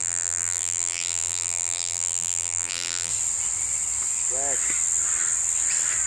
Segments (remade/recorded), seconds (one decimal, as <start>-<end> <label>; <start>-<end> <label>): 0.0-3.1 remade; 3.1-6.1 recorded